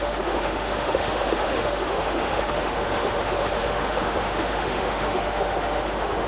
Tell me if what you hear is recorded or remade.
remade